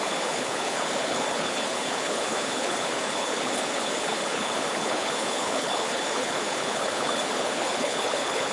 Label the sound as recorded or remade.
remade